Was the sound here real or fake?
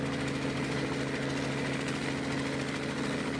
real